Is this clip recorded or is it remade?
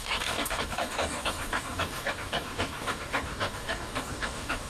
remade